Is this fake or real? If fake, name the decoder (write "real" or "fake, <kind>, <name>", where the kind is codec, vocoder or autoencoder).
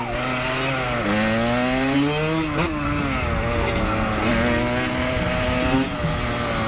real